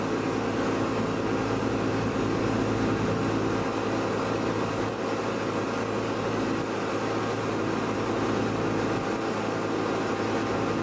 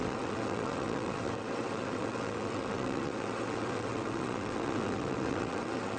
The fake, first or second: second